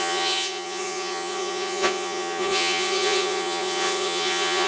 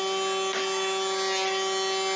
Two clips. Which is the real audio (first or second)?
second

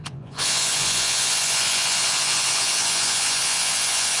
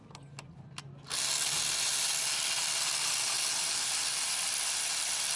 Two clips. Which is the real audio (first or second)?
second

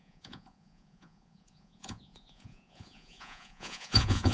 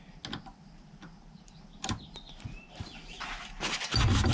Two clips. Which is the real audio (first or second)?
second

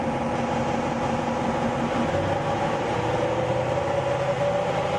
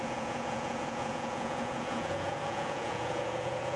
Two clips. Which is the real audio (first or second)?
first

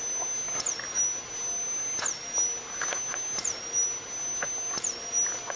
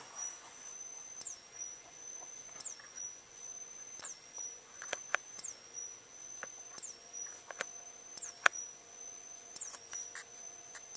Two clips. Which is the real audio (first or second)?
first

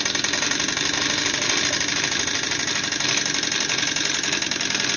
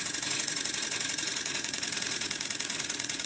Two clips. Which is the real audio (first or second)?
first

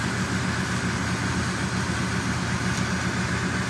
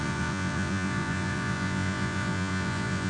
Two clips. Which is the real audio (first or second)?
first